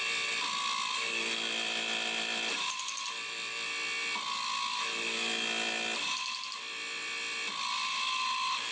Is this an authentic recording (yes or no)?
yes